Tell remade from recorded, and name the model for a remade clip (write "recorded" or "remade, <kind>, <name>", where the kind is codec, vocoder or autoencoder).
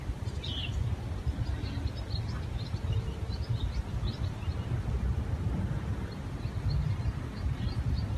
recorded